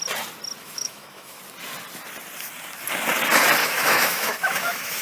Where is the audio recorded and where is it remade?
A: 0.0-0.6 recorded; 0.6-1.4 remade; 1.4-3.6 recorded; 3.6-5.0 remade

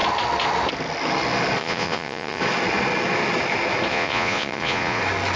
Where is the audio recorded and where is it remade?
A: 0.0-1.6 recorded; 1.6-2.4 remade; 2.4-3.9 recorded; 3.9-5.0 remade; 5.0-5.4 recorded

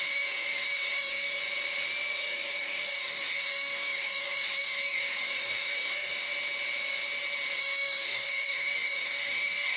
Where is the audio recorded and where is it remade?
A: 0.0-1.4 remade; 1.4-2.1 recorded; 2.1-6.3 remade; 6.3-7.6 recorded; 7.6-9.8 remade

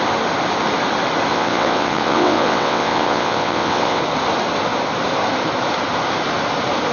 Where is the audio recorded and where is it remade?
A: 0.0-1.3 recorded; 1.3-4.0 remade; 4.0-6.9 recorded